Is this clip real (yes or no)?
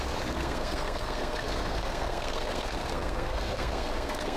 no